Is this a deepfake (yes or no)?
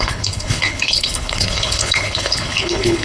yes